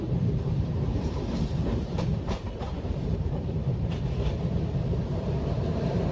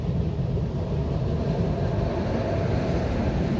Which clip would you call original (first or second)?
second